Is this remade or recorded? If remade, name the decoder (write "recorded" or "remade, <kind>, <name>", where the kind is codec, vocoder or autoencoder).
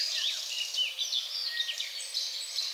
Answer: recorded